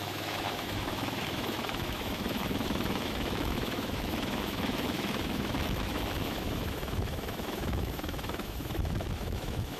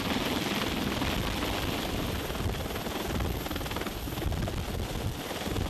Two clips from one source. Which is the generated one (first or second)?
first